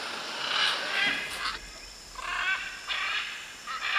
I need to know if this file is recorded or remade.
recorded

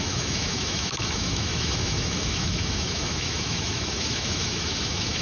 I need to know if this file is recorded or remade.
remade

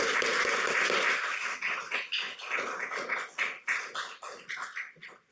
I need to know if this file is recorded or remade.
recorded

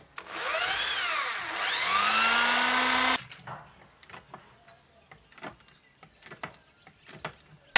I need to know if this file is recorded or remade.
recorded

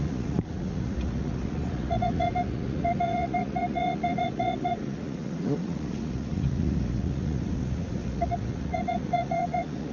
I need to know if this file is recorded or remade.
remade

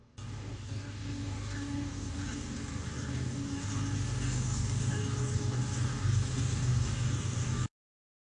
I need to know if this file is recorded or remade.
remade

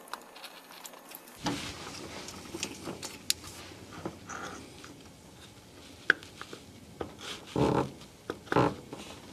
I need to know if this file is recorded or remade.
recorded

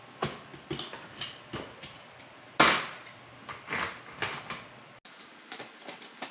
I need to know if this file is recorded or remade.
recorded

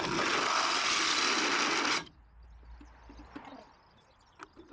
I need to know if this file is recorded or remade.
recorded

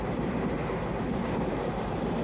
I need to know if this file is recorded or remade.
remade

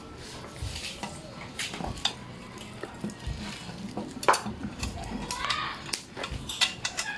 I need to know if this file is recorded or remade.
recorded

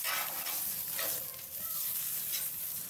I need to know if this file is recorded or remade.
recorded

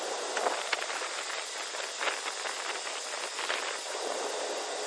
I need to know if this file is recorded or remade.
recorded